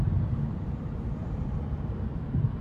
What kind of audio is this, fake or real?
fake